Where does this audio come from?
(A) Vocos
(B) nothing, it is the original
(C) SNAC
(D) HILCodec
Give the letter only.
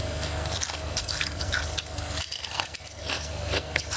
C